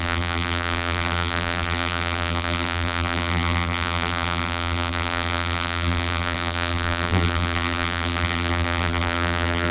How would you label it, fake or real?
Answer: fake